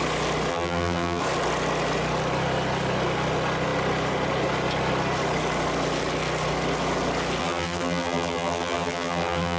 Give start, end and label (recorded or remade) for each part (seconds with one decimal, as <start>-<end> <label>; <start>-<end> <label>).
0.0-0.5 recorded; 0.5-1.2 remade; 1.2-7.4 recorded; 7.4-9.6 remade

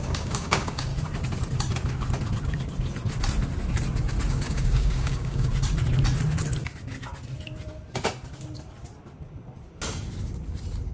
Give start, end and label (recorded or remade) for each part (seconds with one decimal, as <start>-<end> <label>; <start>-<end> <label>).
0.0-0.9 remade; 0.9-4.3 recorded; 4.3-5.5 remade; 5.5-10.9 recorded

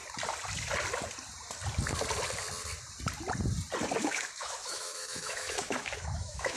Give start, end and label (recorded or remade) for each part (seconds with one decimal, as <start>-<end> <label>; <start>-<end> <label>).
0.0-4.0 recorded; 4.0-6.6 remade

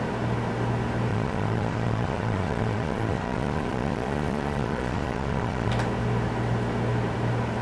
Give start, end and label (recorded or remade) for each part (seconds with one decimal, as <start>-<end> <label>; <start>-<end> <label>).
0.0-1.1 recorded; 1.1-5.7 remade; 5.7-7.6 recorded